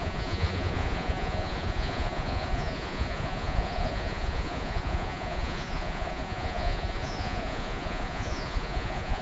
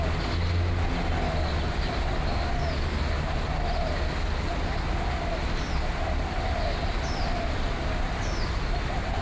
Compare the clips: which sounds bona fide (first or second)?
second